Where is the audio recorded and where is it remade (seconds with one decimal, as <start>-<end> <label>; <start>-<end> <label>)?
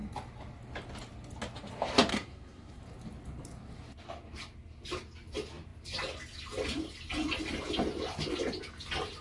0.0-2.1 recorded; 2.1-2.8 remade; 2.8-9.2 recorded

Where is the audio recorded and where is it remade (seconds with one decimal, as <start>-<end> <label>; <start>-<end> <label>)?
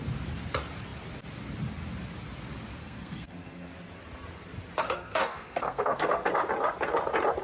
0.0-2.8 recorded; 2.8-3.7 remade; 3.7-4.8 recorded; 4.8-6.3 remade; 6.3-7.4 recorded